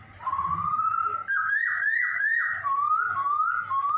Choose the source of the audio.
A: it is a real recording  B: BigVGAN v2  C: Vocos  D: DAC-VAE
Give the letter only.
A